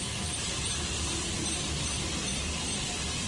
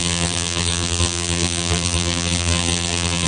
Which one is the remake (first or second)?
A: second